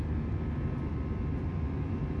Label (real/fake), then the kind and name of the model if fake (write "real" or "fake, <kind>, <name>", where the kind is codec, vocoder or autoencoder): real